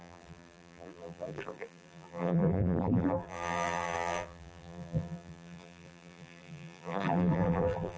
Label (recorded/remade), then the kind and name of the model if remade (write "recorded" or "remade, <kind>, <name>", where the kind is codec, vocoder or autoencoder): remade, vocoder, BigVGAN v2